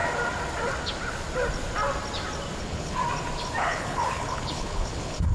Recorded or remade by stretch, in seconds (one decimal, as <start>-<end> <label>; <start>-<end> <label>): 0.0-2.6 recorded; 2.6-3.0 remade; 3.0-3.6 recorded; 3.6-5.3 remade